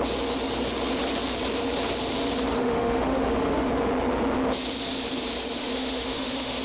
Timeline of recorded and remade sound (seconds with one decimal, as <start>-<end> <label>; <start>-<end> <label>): 0.0-2.5 recorded; 2.5-3.7 remade; 3.7-5.6 recorded; 5.6-6.6 remade